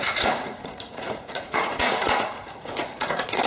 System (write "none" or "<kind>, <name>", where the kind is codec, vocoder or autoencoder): vocoder, Vocos